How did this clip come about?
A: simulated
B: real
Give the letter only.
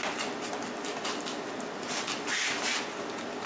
B